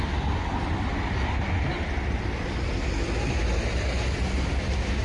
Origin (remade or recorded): recorded